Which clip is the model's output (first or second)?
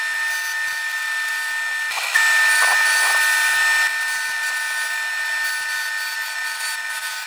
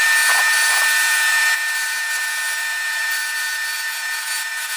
second